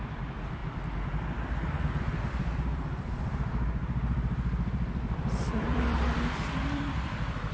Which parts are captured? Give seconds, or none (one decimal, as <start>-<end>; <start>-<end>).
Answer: 0.6-2.3